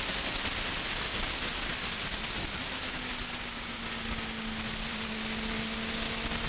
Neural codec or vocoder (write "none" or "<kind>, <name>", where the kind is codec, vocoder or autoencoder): none